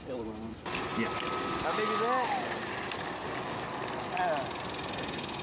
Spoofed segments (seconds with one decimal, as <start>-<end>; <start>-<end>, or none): none